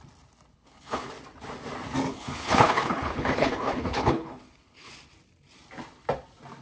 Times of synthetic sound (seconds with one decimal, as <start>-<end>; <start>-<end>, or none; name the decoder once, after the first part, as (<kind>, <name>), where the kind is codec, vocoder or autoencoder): 0.5-1.1 (codec, HILCodec); 2.1-4.9